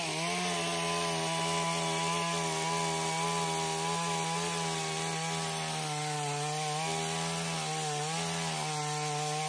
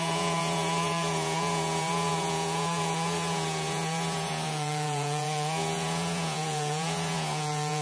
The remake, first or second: second